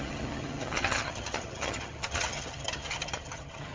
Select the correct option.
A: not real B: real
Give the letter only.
A